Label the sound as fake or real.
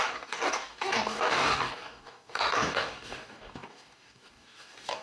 fake